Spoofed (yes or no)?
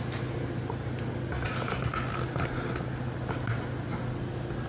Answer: no